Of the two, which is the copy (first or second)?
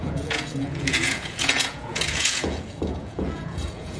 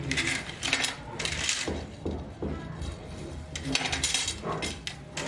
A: first